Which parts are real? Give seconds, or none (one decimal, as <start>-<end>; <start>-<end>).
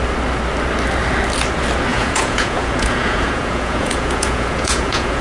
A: 0.0-1.9